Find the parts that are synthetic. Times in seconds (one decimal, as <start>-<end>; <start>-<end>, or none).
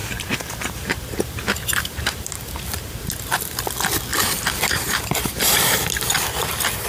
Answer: 0.0-3.6; 4.1-5.9